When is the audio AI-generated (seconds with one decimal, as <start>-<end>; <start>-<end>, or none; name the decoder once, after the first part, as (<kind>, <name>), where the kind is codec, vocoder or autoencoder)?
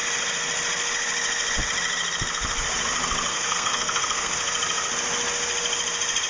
3.3-4.3 (codec, SNAC)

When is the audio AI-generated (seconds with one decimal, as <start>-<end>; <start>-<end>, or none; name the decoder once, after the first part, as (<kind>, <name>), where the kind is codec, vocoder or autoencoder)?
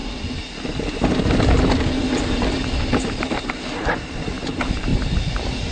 none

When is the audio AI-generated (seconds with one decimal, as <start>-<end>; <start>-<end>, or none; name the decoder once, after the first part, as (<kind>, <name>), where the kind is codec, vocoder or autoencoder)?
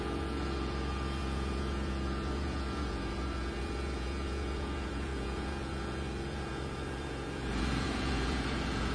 0.0-8.9 (vocoder, Vocos)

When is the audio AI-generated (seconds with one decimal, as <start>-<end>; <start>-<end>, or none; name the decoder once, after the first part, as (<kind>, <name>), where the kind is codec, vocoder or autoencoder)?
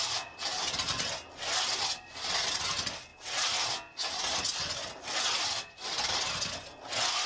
none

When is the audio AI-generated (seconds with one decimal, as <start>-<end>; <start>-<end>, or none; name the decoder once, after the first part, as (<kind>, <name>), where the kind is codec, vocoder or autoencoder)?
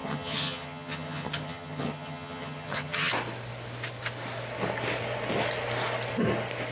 0.0-3.1 (vocoder, HiFi-GAN)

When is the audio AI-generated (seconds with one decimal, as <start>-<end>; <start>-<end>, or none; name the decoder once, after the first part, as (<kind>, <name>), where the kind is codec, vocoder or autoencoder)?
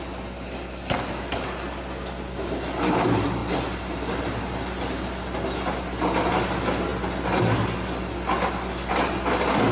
none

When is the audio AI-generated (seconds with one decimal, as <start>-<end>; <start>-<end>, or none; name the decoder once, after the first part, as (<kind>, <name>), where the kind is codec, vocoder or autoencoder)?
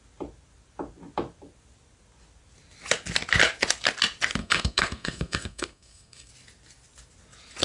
4.4-6.3 (codec, SNAC)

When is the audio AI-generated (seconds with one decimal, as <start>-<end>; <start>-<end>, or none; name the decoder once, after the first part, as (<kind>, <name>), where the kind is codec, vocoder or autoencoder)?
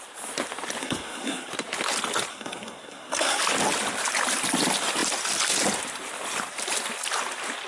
0.8-1.5 (codec, SNAC); 2.3-3.4